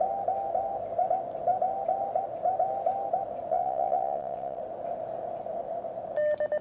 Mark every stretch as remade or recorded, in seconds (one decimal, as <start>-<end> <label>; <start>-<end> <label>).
0.0-3.5 recorded; 3.5-4.6 remade; 4.6-6.6 recorded